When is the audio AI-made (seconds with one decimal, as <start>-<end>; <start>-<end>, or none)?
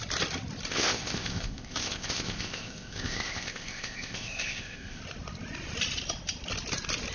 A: 0.7-5.0